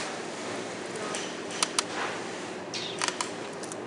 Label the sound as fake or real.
real